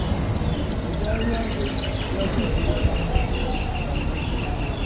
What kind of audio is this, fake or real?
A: real